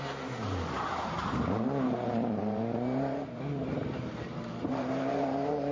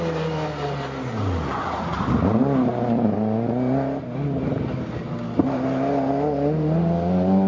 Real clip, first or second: second